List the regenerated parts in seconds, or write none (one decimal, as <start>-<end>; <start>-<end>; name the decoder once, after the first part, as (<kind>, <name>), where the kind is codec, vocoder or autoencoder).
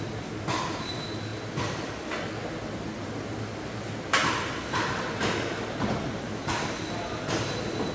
none